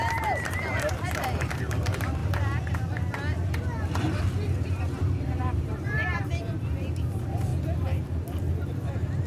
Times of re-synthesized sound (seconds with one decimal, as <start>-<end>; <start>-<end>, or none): 0.0-2.2; 5.2-7.5